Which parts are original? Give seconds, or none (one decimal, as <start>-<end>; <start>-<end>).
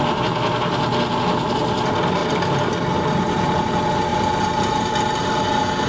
0.0-5.9